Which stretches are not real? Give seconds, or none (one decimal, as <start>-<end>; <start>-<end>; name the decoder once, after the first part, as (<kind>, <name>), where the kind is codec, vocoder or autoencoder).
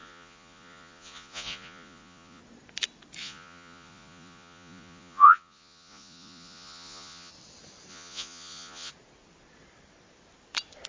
0.0-2.4 (vocoder, Vocos); 3.2-7.3; 7.9-8.9